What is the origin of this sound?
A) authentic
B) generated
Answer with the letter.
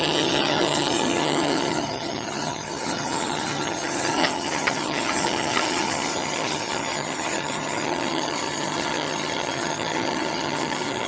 B